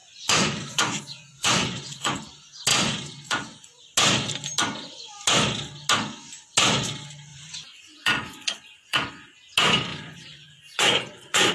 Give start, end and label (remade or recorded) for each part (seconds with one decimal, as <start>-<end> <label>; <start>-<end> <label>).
0.0-2.2 remade; 2.2-2.7 recorded; 2.7-3.8 remade; 3.8-7.3 recorded; 7.3-9.1 remade; 9.1-9.9 recorded; 9.9-11.5 remade